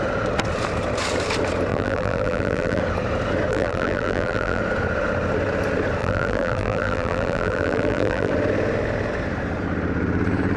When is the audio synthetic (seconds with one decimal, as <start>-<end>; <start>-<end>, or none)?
1.7-2.8; 3.5-4.6; 6.0-8.3